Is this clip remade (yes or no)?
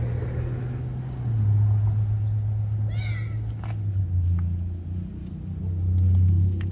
no